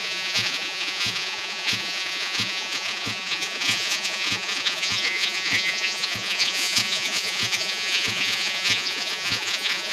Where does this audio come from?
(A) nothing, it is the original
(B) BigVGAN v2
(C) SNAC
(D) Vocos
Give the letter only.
D